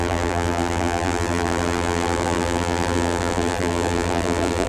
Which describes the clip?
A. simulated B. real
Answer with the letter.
A